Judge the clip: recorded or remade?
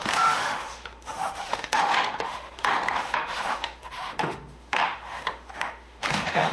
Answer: remade